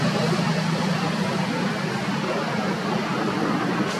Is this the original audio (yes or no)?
yes